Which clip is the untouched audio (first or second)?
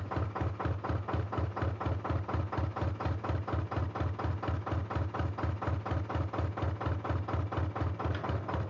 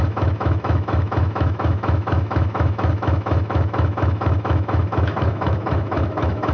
first